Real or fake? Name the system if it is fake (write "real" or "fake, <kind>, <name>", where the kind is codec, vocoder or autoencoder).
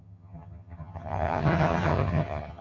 fake, vocoder, HiFi-GAN